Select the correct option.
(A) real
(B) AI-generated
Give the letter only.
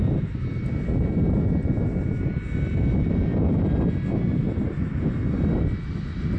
A